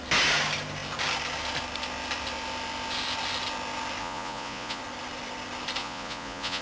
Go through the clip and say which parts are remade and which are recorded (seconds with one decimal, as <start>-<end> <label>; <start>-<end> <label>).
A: 0.0-4.0 recorded; 4.0-4.8 remade; 4.8-5.8 recorded; 5.8-6.6 remade